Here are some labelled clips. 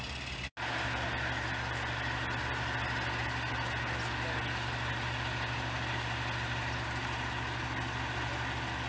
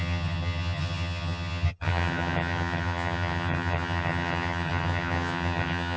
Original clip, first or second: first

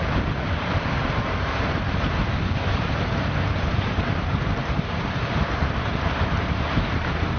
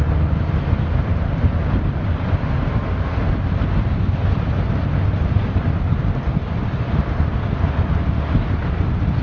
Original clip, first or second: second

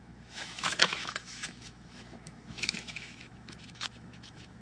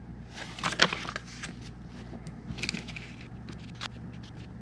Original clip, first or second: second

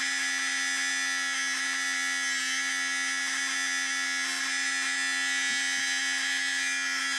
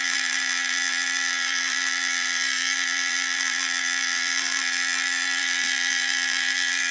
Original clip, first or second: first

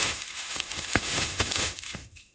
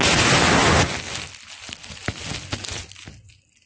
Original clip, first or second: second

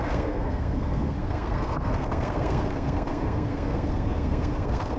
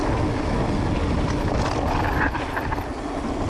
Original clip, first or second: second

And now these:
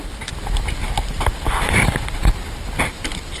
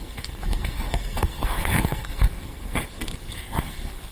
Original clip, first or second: first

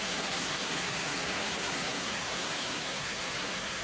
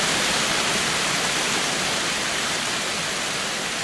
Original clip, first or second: second